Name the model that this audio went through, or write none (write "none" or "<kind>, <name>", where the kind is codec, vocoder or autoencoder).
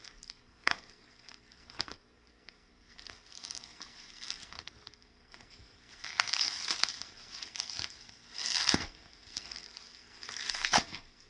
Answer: codec, SNAC